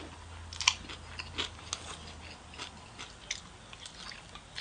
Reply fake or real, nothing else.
real